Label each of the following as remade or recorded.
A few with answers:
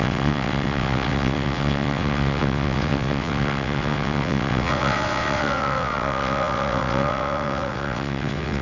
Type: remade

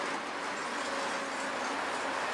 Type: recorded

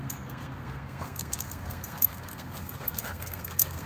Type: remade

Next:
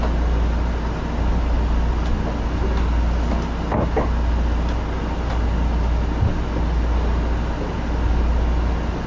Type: recorded